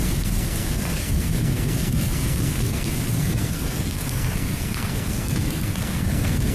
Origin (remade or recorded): remade